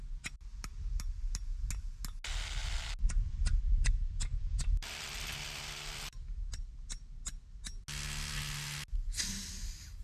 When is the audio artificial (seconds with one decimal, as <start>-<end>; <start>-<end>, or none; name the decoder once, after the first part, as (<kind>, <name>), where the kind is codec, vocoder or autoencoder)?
0.5-1.4 (vocoder, BigVGAN v2); 2.6-7.0